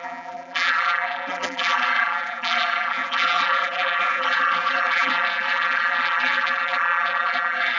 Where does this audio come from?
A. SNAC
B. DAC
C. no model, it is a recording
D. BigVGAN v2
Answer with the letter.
D